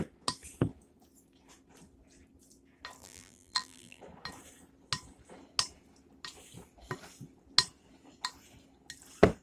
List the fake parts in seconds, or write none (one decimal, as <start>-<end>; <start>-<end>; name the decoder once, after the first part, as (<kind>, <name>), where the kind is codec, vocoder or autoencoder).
3.0-4.0 (vocoder, BigVGAN v2)